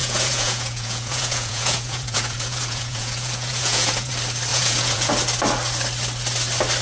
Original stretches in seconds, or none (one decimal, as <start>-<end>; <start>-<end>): 4.1-4.5; 5.1-6.8